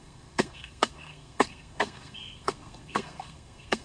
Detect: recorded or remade remade